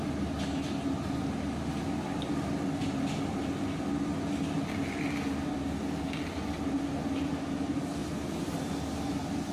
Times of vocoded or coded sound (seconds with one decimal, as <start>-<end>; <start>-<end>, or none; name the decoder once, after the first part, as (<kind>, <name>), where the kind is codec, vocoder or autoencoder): 8.0-8.7 (vocoder, BigVGAN v2)